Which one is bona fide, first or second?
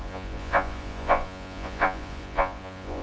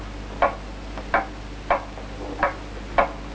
second